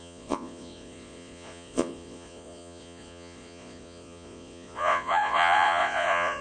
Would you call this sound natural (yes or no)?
no